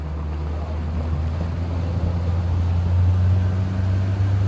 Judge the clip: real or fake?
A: real